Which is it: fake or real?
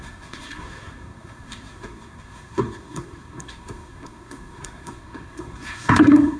fake